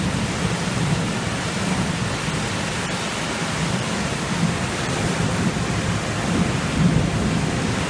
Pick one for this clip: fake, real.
fake